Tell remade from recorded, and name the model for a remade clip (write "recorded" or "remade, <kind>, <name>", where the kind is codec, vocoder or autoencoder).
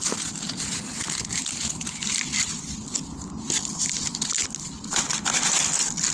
recorded